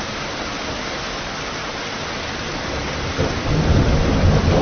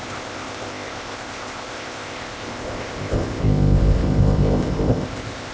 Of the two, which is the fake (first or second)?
second